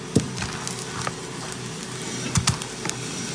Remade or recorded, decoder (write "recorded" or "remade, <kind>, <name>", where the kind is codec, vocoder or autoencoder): recorded